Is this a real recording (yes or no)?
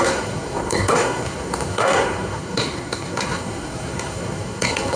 no